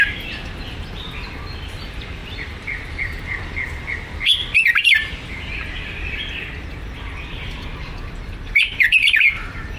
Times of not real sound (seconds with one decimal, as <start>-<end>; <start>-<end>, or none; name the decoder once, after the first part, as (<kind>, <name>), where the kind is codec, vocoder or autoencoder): 0.0-9.8 (vocoder, BigVGAN v2)